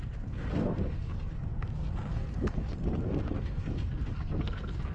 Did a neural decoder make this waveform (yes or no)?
yes